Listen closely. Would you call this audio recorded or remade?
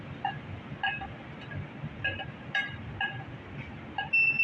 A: recorded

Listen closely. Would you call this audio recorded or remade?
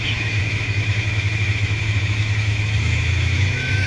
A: remade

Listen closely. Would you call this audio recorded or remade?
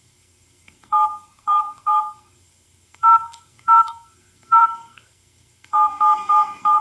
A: remade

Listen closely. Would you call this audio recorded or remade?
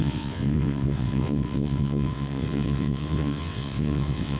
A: remade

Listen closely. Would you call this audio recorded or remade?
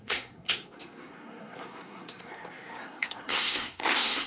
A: remade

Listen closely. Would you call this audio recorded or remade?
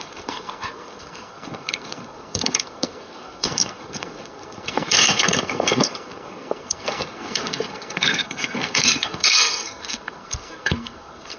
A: remade